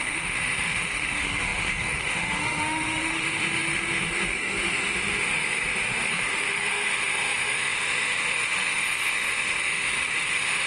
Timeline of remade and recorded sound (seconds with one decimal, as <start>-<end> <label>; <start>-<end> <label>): 0.0-10.7 remade